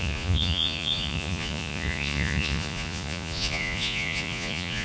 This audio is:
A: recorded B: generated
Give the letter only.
B